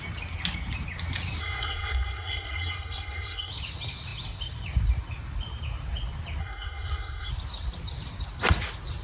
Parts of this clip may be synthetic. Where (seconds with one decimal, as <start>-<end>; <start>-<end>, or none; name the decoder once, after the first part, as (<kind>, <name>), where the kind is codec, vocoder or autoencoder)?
1.4-3.5 (codec, SNAC); 6.4-7.3